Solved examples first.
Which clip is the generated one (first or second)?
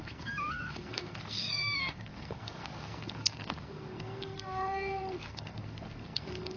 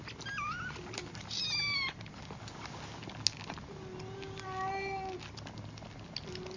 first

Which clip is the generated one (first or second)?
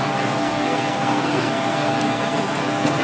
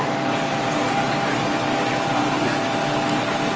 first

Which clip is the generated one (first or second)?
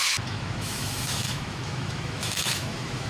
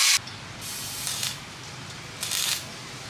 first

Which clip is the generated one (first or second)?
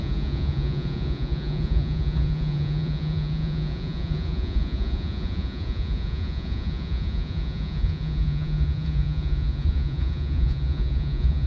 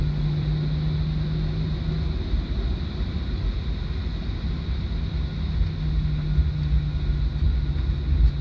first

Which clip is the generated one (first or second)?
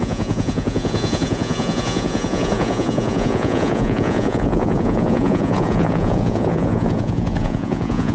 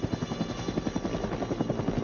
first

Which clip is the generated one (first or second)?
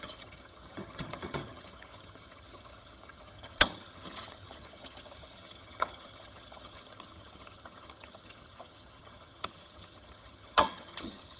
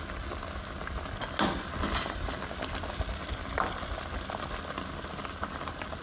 first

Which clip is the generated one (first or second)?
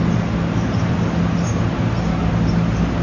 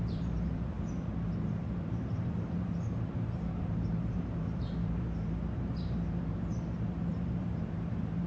second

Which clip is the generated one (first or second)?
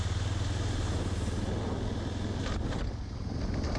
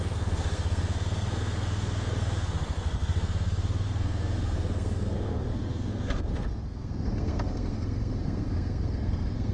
second